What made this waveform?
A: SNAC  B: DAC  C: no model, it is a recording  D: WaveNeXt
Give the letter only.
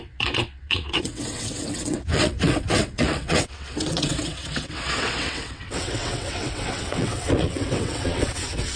D